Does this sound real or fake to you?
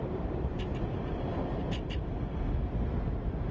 real